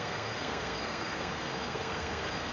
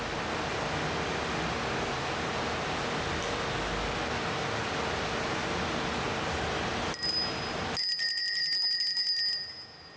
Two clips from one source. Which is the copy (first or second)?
first